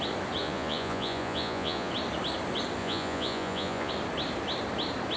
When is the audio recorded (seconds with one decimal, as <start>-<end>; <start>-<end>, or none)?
0.0-0.4; 1.9-2.8; 3.9-5.2